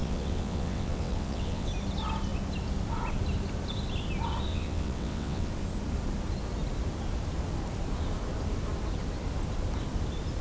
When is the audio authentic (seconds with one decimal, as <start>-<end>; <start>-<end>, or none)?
1.7-4.5; 5.5-10.4